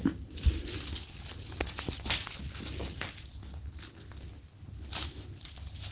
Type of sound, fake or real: real